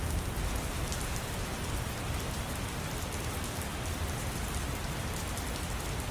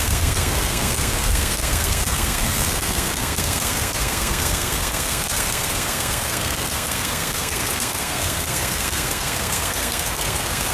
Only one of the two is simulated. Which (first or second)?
second